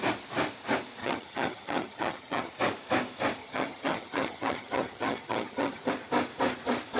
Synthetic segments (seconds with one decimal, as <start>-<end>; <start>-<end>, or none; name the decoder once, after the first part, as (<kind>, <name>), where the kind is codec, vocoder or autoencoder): 1.0-2.5 (vocoder, HiFi-GAN); 3.4-5.9